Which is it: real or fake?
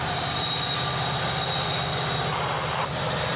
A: real